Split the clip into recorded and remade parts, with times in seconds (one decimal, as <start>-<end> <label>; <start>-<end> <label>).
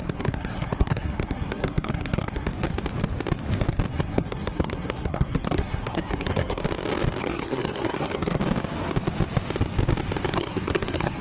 0.0-2.5 remade; 2.5-3.9 recorded; 3.9-6.6 remade; 6.6-7.2 recorded; 7.2-8.4 remade; 8.4-10.3 recorded; 10.3-11.2 remade